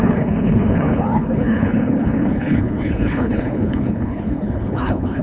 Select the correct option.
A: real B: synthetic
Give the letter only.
B